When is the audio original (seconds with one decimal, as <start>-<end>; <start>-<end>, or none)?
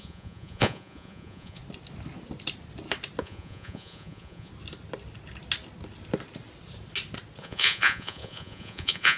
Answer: 1.6-3.2; 4.5-7.4